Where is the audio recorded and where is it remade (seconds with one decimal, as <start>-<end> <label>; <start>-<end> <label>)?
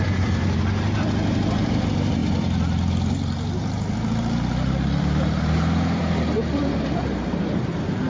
0.0-8.1 remade